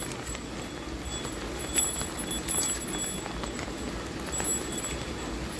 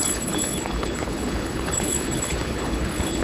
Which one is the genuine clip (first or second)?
first